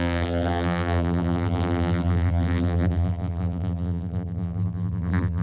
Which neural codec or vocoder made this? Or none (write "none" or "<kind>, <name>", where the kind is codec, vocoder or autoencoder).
vocoder, BigVGAN v2